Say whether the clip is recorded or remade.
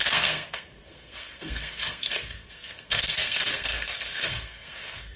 remade